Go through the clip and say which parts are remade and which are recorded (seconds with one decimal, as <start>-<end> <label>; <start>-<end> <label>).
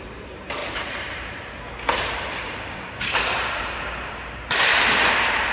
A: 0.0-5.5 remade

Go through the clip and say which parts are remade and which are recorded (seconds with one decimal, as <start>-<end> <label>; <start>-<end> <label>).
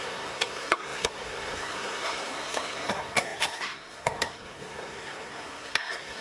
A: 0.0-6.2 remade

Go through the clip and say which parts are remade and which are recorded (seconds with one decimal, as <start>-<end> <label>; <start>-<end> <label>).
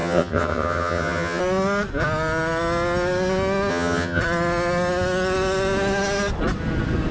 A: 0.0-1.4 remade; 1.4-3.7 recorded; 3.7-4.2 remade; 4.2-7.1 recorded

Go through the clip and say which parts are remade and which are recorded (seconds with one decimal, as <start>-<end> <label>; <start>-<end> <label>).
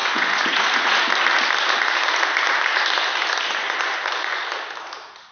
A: 0.0-1.0 remade; 1.0-3.6 recorded; 3.6-4.5 remade; 4.5-5.3 recorded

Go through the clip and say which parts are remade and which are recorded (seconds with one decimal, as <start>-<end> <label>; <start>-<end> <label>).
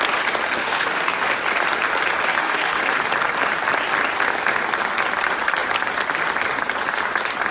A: 0.0-0.6 recorded; 0.6-1.2 remade; 1.2-2.3 recorded; 2.3-2.8 remade; 2.8-7.5 recorded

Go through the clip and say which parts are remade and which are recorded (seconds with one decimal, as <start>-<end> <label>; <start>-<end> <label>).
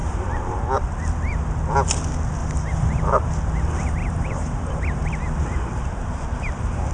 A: 0.0-0.6 remade; 0.6-2.4 recorded; 2.4-3.3 remade; 3.3-4.0 recorded; 4.0-4.8 remade; 4.8-6.9 recorded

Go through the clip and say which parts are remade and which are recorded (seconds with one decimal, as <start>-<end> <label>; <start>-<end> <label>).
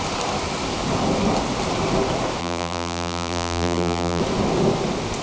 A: 0.0-2.4 recorded; 2.4-4.2 remade; 4.2-5.2 recorded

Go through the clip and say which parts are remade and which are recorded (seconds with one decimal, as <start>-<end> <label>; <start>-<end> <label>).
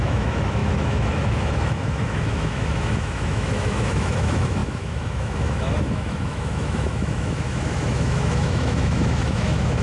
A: 0.0-9.8 remade